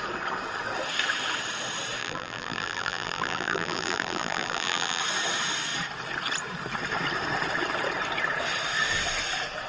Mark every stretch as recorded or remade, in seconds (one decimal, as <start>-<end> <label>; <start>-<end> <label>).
0.0-2.0 recorded; 2.0-5.0 remade; 5.0-9.7 recorded